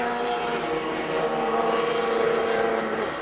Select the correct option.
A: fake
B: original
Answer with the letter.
A